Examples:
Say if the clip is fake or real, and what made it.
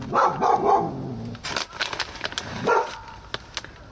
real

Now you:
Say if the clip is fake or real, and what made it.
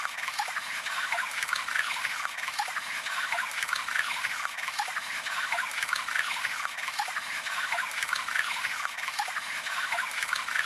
fake, autoencoder, DAC-VAE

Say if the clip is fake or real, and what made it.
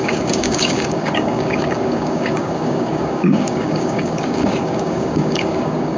fake, codec, DAC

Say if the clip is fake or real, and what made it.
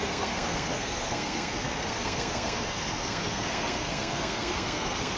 fake, codec, SNAC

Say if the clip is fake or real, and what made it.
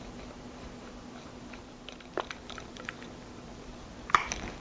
real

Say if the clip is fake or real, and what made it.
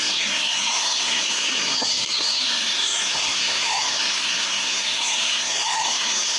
fake, codec, SNAC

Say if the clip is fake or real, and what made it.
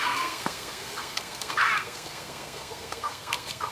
fake, codec, SNAC